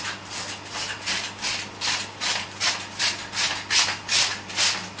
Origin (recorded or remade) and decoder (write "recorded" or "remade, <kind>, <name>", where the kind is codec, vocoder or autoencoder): recorded